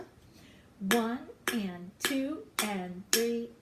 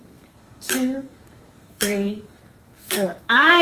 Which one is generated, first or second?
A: second